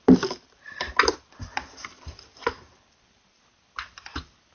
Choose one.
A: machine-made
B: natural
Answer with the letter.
B